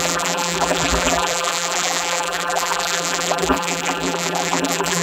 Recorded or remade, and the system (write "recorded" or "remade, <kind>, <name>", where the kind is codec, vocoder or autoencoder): remade, vocoder, BigVGAN v2